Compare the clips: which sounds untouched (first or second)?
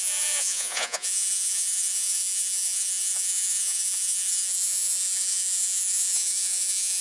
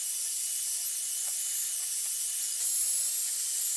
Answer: second